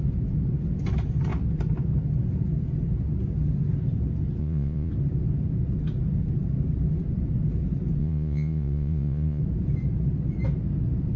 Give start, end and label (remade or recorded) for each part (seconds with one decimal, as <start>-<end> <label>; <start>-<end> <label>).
0.0-4.4 recorded; 4.4-4.9 remade; 4.9-8.0 recorded; 8.0-9.4 remade; 9.4-11.2 recorded